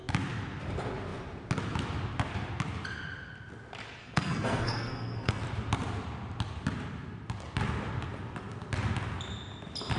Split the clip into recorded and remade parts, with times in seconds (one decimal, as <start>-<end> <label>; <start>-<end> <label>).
0.0-4.0 recorded; 4.0-5.4 remade; 5.4-10.0 recorded